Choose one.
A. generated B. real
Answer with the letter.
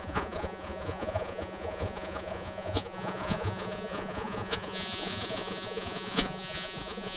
A